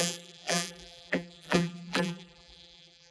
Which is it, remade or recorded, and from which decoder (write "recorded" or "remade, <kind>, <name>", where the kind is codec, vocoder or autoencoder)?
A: remade, vocoder, BigVGAN v2